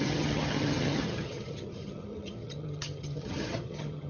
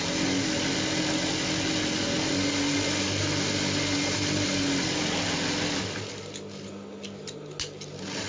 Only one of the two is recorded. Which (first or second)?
second